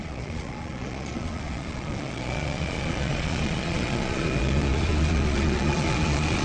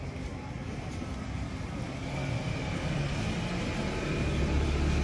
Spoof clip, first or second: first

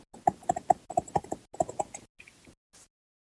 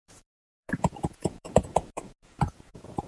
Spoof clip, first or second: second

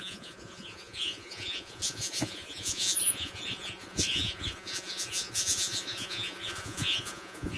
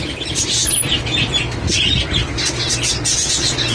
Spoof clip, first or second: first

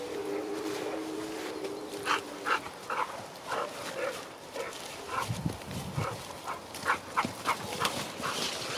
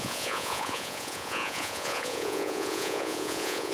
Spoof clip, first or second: second